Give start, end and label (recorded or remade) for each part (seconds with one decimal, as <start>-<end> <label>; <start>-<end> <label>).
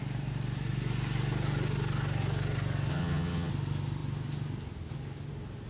0.0-2.9 recorded; 2.9-3.5 remade; 3.5-5.7 recorded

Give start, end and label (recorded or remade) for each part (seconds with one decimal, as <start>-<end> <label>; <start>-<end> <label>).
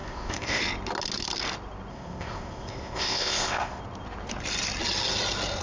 0.0-0.6 remade; 0.6-1.9 recorded; 1.9-3.8 remade; 3.8-5.6 recorded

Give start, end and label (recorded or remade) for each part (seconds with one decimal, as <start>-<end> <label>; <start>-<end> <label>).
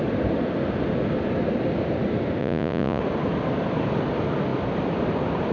0.0-2.4 recorded; 2.4-3.0 remade; 3.0-5.5 recorded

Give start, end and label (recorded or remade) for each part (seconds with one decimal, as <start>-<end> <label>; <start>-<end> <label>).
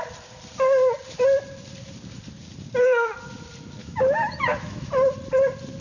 0.0-3.8 recorded; 3.8-4.9 remade; 4.9-5.8 recorded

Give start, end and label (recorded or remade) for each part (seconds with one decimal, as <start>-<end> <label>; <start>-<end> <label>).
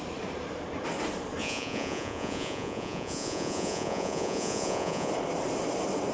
0.0-1.4 recorded; 1.4-5.1 remade; 5.1-6.1 recorded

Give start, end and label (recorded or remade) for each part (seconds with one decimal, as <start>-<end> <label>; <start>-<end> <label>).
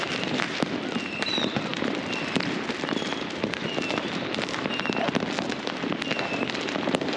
0.0-1.7 recorded; 1.7-6.0 remade; 6.0-7.2 recorded